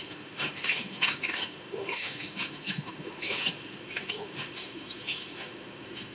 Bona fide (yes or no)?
no